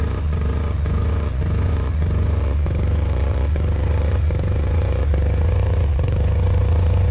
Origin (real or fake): fake